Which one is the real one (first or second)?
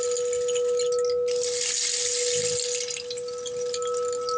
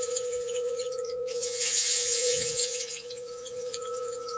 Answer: first